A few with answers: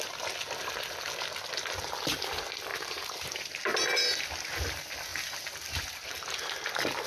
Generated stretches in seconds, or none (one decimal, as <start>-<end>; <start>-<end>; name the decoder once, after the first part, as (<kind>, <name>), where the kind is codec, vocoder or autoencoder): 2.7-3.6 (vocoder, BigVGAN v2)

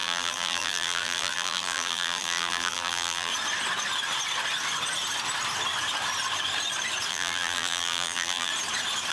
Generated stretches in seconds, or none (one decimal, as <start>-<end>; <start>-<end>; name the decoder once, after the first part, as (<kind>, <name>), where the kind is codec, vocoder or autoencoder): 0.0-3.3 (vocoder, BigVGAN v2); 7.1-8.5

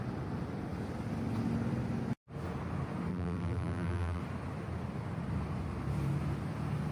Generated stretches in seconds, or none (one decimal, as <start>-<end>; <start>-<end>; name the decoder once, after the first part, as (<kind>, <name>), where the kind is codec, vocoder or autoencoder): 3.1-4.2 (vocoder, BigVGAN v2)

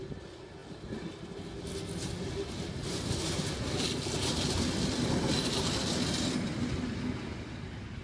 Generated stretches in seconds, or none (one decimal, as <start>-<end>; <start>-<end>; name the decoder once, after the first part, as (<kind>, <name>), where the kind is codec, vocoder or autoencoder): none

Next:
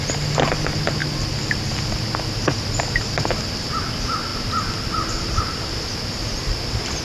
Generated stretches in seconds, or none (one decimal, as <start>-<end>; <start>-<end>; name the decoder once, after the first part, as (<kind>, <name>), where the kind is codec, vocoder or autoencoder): none

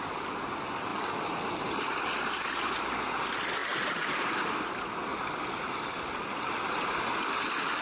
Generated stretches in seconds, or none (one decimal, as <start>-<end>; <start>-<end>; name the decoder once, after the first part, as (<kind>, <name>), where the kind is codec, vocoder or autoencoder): 0.9-2.8 (vocoder, BigVGAN v2); 3.6-4.2

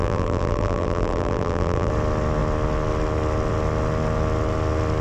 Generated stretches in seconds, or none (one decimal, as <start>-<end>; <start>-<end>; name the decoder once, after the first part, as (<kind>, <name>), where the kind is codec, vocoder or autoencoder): 0.0-1.9 (vocoder, BigVGAN v2)

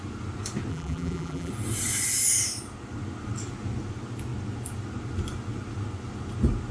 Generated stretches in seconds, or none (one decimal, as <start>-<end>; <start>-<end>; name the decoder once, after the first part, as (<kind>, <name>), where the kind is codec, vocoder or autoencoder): 0.7-1.5 (vocoder, BigVGAN v2)